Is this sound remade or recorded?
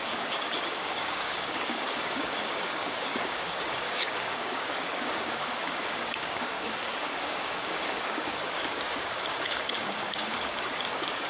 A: remade